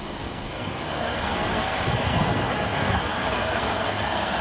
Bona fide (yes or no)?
no